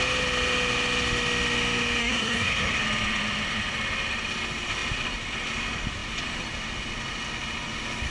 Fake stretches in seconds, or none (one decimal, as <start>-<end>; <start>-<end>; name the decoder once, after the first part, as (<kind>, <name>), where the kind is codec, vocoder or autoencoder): 2.0-2.7 (codec, SNAC)